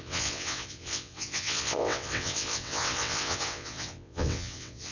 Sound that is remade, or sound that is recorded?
remade